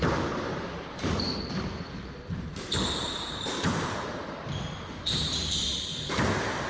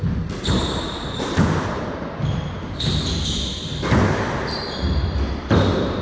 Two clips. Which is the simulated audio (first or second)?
first